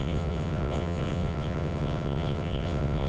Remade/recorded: remade